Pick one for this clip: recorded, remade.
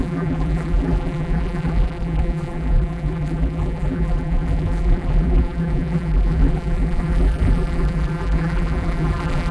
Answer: remade